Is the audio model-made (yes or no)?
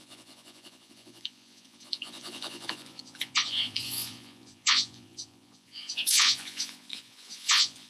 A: yes